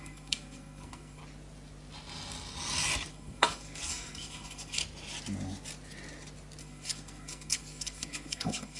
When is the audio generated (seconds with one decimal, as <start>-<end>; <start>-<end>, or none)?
0.0-1.2; 3.1-4.8; 6.6-8.8